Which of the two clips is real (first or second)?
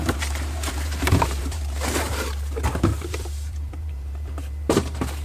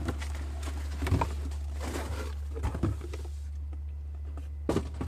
second